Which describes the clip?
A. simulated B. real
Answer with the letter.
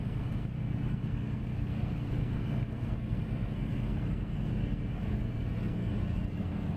A